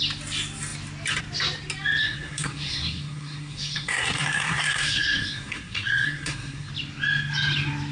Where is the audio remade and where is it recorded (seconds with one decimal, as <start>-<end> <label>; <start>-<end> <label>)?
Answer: 0.0-2.0 recorded; 2.0-6.7 remade; 6.7-7.9 recorded